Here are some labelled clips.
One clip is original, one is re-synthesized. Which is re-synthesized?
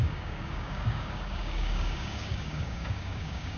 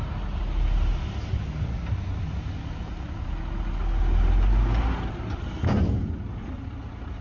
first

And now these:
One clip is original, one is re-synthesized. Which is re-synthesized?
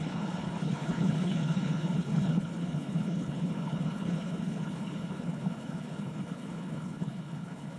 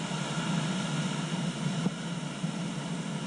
first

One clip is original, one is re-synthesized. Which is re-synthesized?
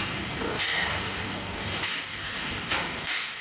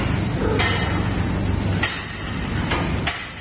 first